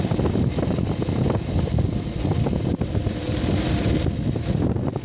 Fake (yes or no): no